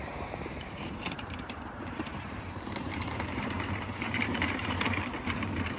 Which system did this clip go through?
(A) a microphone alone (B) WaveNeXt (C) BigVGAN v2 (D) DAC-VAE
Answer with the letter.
C